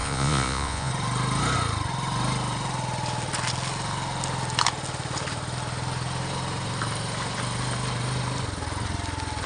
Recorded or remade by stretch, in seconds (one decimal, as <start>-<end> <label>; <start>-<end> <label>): 0.0-0.9 remade; 0.9-9.5 recorded